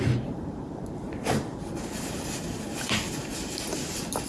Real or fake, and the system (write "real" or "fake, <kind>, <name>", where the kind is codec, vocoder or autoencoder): fake, vocoder, BigVGAN v2